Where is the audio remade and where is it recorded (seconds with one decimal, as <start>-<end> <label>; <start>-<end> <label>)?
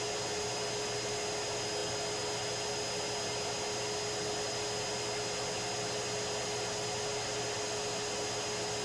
0.0-8.8 recorded